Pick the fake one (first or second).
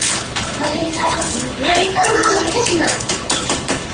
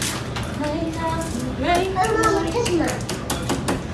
first